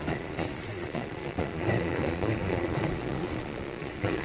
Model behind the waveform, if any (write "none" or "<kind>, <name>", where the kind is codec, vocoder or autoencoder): vocoder, Vocos